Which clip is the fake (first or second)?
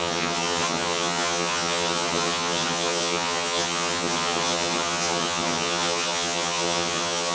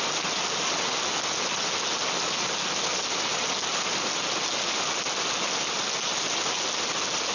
first